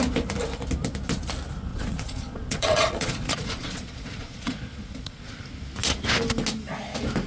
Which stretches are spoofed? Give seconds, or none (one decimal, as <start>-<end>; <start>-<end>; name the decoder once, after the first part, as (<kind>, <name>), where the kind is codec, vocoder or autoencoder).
1.7-5.3 (vocoder, Vocos)

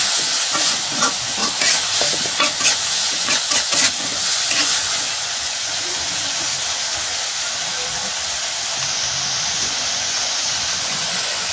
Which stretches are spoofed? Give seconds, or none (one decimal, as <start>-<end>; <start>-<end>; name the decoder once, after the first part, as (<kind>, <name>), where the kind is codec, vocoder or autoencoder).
0.0-1.4 (vocoder, Vocos); 2.3-6.5; 9.5-11.5

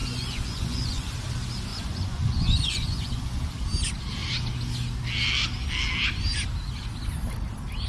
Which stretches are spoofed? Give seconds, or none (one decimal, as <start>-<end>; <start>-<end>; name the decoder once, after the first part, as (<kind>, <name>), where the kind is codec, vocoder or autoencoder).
0.0-1.1 (vocoder, Vocos); 1.7-3.4

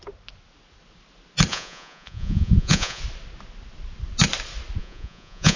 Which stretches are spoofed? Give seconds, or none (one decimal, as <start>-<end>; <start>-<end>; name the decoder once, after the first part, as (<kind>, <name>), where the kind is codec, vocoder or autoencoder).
1.5-3.0 (vocoder, Vocos); 4.8-5.6

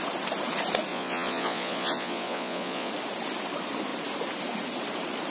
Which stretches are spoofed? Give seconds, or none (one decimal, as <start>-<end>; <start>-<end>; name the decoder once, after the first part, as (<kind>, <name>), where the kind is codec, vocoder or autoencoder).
0.9-2.9 (vocoder, Vocos)

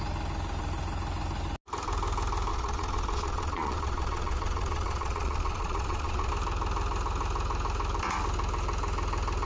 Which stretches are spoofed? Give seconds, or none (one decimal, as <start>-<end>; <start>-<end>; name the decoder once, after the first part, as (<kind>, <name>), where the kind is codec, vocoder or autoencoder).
2.5-6.3 (vocoder, Vocos)

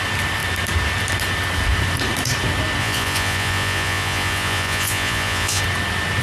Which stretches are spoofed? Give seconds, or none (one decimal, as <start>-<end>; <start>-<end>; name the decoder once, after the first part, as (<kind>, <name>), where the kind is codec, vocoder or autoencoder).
2.8-5.6 (vocoder, Vocos)

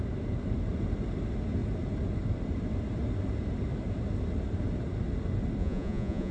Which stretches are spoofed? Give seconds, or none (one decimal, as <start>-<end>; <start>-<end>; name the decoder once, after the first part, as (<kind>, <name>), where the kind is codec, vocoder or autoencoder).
5.6-6.3 (vocoder, Vocos)